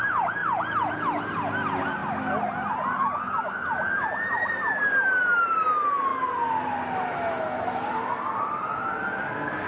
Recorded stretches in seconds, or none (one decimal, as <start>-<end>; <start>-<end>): 0.0-9.7